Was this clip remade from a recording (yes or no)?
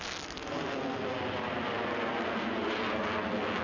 no